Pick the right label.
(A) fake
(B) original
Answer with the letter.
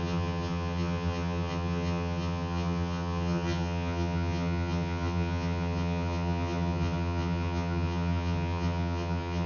A